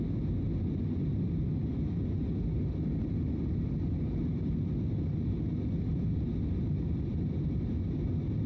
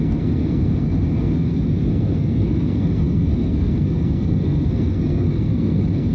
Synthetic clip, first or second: second